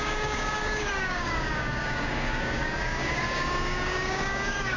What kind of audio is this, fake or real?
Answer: fake